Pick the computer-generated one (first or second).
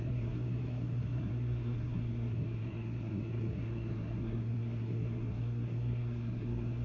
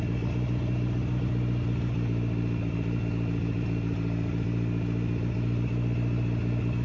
first